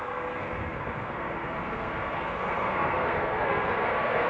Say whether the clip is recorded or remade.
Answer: remade